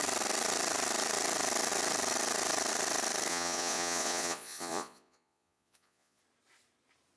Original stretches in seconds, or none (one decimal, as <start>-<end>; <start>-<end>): 0.0-3.3; 6.2-7.2